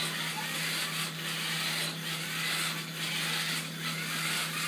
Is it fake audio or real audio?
real